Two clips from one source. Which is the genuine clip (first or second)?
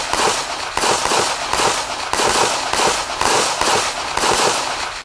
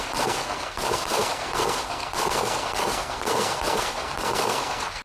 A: first